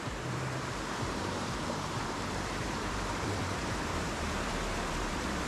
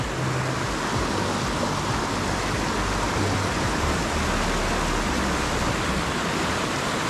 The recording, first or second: second